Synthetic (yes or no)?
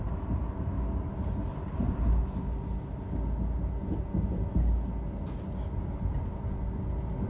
no